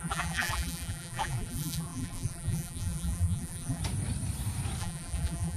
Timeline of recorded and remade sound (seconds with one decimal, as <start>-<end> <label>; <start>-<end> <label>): 0.0-3.8 remade; 3.8-4.8 recorded; 4.8-5.6 remade